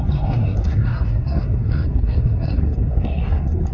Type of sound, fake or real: fake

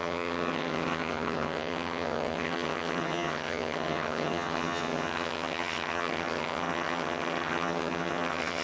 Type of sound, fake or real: fake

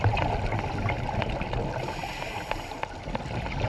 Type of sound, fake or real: real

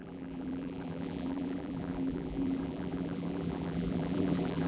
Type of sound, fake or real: fake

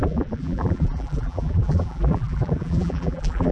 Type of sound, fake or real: fake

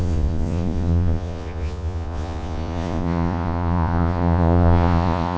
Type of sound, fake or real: fake